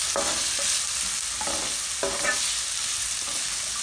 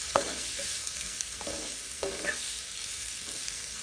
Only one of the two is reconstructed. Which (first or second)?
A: second